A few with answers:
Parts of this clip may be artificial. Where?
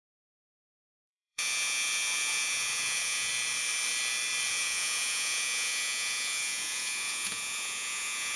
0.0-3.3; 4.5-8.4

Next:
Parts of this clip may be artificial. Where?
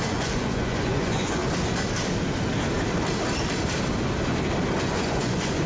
0.0-1.4; 4.8-5.7